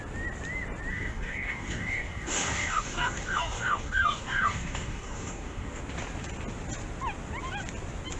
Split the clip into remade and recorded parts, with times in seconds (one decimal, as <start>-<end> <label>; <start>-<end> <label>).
0.0-0.9 recorded; 0.9-5.8 remade; 5.8-8.2 recorded